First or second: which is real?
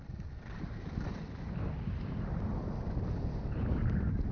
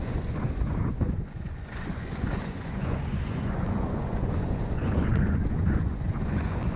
first